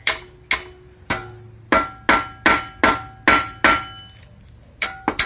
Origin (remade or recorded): recorded